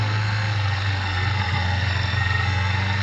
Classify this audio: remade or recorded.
remade